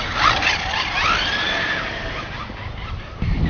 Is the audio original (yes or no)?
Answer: yes